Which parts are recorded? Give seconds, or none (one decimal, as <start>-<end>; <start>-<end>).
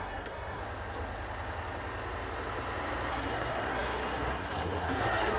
0.6-3.1